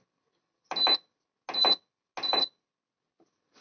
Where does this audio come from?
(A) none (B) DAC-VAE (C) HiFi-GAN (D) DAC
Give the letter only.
A